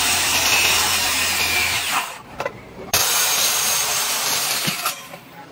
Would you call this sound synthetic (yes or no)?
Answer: yes